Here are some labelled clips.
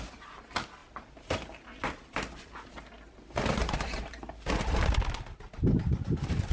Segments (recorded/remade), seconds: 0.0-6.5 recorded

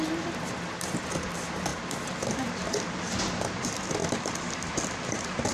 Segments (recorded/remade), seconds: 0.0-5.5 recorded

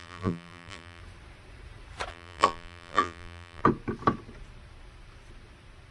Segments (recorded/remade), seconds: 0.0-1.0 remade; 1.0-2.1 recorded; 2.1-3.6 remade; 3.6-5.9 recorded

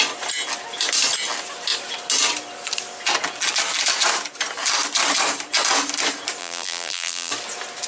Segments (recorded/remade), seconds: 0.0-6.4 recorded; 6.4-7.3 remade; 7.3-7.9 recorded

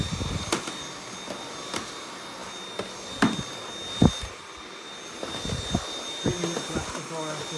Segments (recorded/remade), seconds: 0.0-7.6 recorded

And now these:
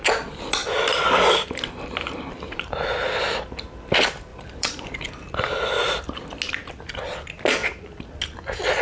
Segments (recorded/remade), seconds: 0.0-4.3 recorded; 4.3-5.1 remade; 5.1-8.8 recorded

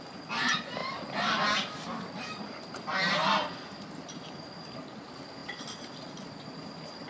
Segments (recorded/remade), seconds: 0.0-7.1 recorded